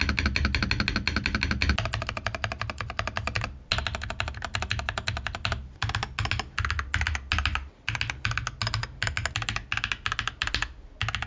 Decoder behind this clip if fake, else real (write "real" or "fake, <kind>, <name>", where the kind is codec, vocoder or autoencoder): real